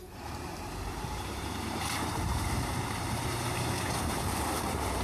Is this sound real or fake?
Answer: fake